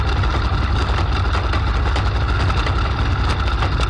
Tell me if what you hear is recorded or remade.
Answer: recorded